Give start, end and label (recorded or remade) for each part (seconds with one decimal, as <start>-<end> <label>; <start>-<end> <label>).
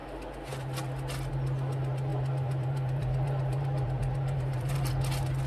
0.0-2.1 recorded; 2.1-4.9 remade; 4.9-5.5 recorded